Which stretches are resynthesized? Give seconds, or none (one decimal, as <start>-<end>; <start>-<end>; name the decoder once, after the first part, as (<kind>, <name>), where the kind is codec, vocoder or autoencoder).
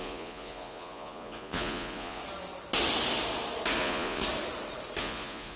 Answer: 0.0-2.2 (vocoder, Vocos); 3.8-4.2; 5.0-5.6